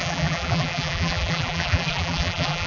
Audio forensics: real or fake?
fake